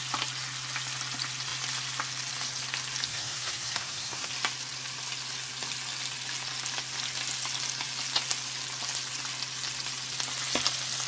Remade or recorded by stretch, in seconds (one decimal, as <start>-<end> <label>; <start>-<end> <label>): 0.0-3.1 recorded; 3.1-4.3 remade; 4.3-11.1 recorded